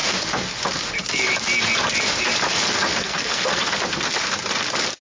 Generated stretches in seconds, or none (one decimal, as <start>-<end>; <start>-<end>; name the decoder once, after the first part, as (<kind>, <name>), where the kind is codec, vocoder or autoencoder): 2.9-3.6 (codec, SNAC)